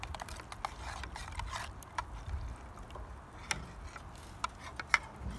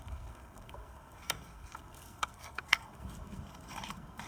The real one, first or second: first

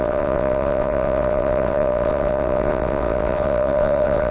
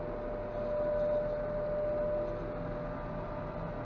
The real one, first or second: second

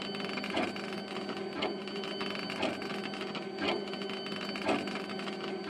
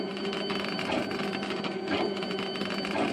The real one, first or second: first